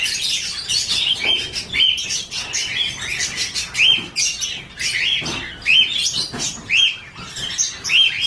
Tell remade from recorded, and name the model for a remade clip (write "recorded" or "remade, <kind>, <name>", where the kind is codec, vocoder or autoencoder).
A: recorded